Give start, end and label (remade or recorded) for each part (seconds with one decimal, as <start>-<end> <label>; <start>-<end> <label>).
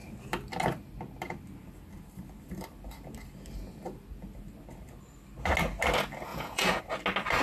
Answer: 0.0-6.3 recorded; 6.3-6.8 remade; 6.8-7.4 recorded